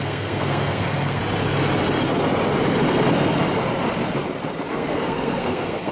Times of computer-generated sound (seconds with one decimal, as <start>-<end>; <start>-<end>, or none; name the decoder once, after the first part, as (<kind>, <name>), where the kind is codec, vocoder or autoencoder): 0.0-1.2 (codec, SNAC); 4.7-5.9

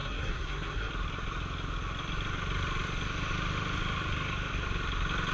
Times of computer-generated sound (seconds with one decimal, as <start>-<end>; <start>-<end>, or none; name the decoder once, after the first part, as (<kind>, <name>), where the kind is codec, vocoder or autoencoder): 0.0-0.9 (codec, SNAC)

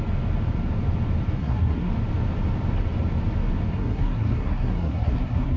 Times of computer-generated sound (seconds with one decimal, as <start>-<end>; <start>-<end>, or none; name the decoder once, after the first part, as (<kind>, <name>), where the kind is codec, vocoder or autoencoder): 1.4-1.9 (codec, SNAC); 3.7-5.6

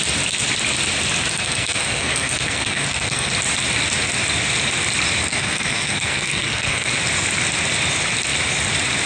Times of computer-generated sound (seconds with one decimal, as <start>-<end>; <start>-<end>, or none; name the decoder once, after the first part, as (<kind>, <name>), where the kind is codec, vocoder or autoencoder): 1.3-3.3 (codec, SNAC); 5.2-6.9

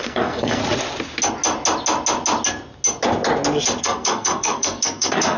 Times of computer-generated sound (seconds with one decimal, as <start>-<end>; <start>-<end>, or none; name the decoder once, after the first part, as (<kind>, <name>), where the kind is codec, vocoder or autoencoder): 0.0-0.6 (codec, SNAC); 3.8-5.4

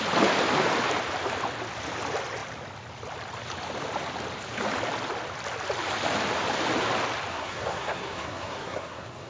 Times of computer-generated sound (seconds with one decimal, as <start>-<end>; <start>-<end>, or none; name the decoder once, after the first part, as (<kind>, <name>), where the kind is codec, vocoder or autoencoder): 7.3-9.3 (codec, SNAC)

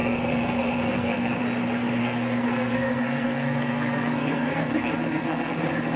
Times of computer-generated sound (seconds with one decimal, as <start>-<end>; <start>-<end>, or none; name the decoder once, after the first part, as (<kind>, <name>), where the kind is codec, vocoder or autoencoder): 0.0-1.4 (codec, SNAC); 2.0-5.6

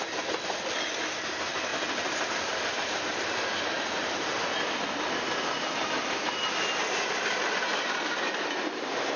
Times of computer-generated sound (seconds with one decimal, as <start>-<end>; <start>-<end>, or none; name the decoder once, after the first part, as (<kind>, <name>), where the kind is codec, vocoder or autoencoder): none